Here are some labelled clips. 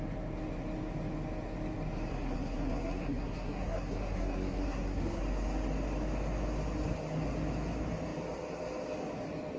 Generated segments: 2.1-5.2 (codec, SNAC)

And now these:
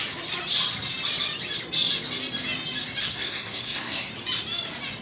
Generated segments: 3.0-4.1 (codec, SNAC)

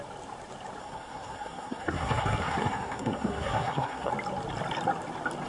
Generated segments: 0.8-4.1 (codec, SNAC)

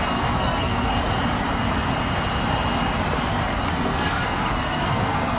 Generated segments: 0.0-0.9 (codec, SNAC); 3.7-5.4